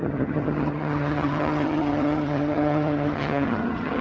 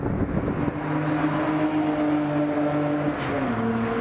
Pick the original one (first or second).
second